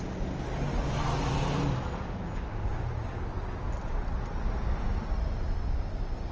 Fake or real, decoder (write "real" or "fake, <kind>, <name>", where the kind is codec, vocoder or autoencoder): real